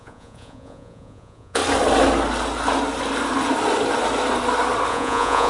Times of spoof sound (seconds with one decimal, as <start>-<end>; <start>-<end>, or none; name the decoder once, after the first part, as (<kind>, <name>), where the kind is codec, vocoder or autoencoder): 0.0-1.6 (vocoder, Vocos); 4.9-5.5